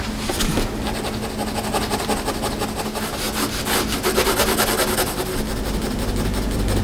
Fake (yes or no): no